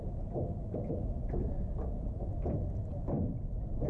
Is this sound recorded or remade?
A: recorded